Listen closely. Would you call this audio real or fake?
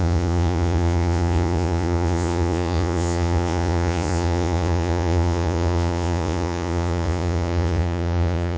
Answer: fake